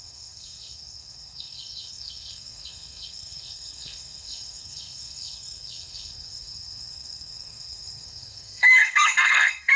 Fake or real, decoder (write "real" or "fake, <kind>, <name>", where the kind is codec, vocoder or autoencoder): fake, codec, SNAC